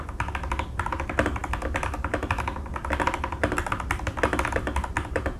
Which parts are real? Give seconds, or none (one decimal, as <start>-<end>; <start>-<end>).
0.0-5.4